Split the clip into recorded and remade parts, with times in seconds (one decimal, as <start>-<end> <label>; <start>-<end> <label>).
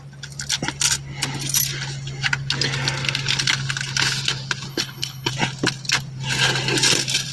0.0-4.7 recorded; 4.7-5.3 remade; 5.3-7.3 recorded